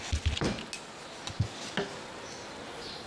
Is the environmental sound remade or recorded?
recorded